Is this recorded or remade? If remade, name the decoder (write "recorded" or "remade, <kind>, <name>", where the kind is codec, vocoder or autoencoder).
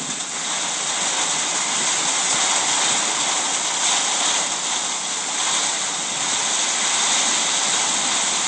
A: recorded